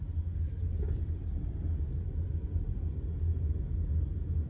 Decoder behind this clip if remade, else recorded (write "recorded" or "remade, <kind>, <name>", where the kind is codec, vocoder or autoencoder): recorded